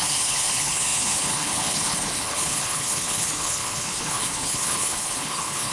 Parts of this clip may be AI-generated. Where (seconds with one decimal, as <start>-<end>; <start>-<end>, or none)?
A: 0.0-5.7